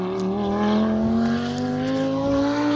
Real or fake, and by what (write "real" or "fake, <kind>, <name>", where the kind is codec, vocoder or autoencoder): real